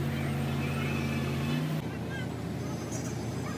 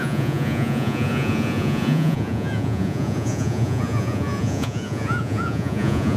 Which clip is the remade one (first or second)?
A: second